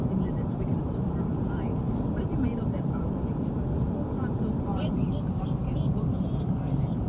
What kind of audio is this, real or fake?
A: fake